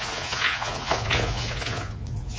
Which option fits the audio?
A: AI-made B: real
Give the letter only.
A